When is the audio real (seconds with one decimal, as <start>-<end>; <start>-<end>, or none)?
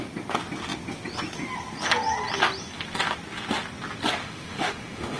0.0-4.2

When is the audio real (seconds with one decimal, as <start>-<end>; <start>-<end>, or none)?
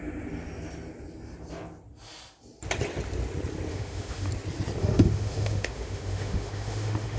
0.0-3.7; 4.3-4.8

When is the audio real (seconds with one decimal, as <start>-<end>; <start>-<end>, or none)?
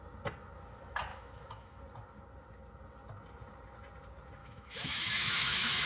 0.0-1.1; 1.8-4.4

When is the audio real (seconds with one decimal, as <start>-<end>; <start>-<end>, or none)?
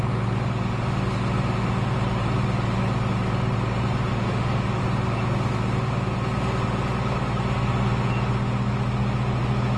0.0-4.1; 4.8-9.8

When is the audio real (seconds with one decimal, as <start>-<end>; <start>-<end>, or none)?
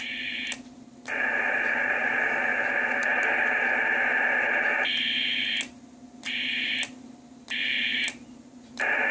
0.0-9.1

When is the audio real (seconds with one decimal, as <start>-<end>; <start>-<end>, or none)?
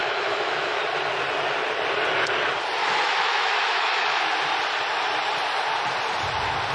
0.8-2.8; 4.2-6.7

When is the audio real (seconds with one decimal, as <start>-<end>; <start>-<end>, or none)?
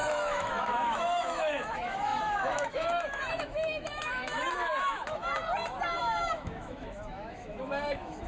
5.3-6.0